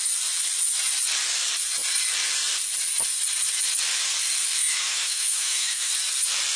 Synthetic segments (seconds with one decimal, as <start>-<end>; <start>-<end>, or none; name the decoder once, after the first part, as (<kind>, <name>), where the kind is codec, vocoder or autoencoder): 4.6-5.9 (autoencoder, DAC-VAE)